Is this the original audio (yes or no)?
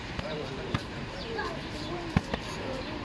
no